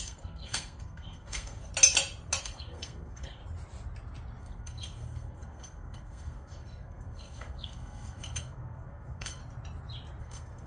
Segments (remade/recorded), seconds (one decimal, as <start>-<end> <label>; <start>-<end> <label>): 0.0-1.7 remade; 1.7-2.4 recorded; 2.4-3.4 remade; 3.4-4.4 recorded; 4.4-9.4 remade; 9.4-10.2 recorded; 10.2-10.7 remade